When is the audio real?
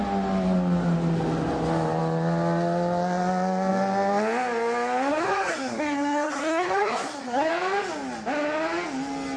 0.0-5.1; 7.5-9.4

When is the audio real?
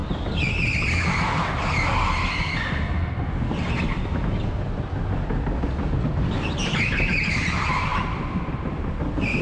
0.0-9.4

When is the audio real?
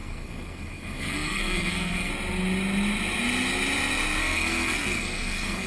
2.1-4.2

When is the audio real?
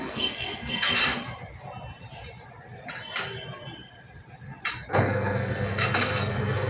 1.0-4.9